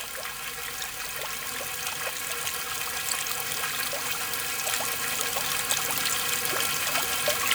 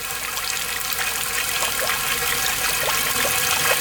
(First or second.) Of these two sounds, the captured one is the first